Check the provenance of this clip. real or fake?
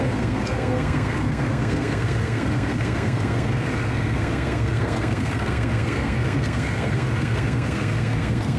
fake